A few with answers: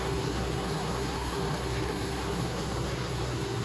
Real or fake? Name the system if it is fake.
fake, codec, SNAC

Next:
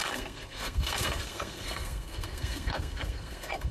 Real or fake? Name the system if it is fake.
fake, codec, SNAC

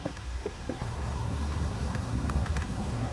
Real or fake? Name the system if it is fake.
fake, codec, SNAC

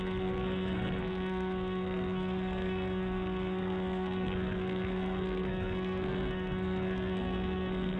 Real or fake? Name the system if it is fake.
fake, codec, SNAC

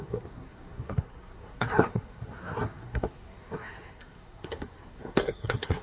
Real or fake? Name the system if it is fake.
fake, codec, SNAC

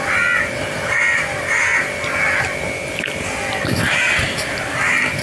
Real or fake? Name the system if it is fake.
real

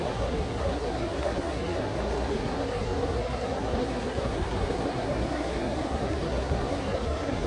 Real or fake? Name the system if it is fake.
fake, codec, SNAC